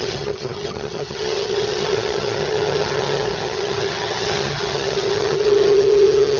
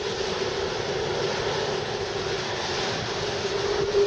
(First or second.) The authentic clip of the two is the second